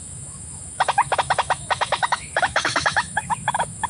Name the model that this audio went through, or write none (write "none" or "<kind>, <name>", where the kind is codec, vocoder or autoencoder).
autoencoder, DAC-VAE